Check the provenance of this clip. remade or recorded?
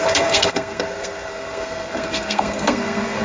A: remade